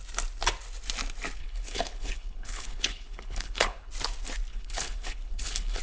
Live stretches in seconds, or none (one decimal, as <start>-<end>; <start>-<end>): 0.0-1.4; 3.9-4.5